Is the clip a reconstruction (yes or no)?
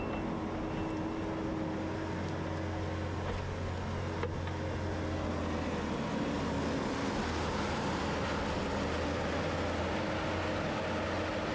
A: no